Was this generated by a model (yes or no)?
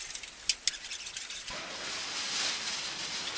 no